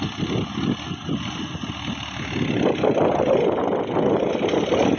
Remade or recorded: recorded